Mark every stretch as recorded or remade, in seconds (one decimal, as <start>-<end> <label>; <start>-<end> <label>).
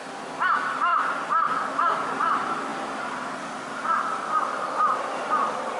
0.0-0.9 recorded; 0.9-1.9 remade; 1.9-2.7 recorded; 2.7-5.8 remade